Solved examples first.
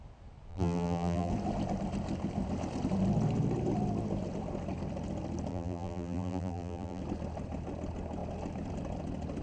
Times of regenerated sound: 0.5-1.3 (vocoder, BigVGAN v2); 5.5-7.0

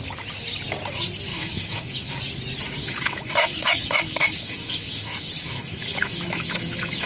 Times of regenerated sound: 1.3-2.1 (autoencoder, DAC-VAE); 2.8-7.1

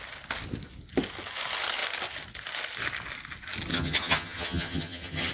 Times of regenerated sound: 3.7-5.3 (vocoder, HiFi-GAN)